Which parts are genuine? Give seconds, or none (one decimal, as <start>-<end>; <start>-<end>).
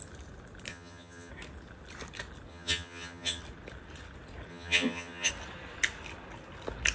0.0-0.7; 1.3-2.5; 3.4-4.5; 5.3-6.9